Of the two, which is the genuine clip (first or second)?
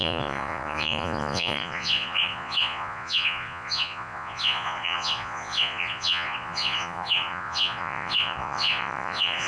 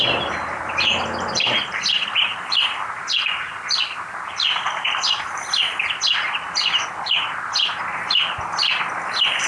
second